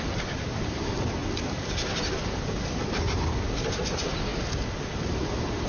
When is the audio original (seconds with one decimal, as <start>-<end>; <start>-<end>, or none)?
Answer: 0.0-5.7